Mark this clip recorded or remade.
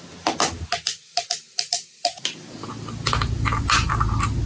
recorded